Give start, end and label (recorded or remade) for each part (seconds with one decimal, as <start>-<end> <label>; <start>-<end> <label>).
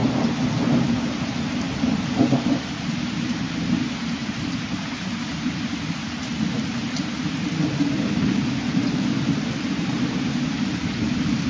0.0-1.1 recorded; 1.1-11.5 remade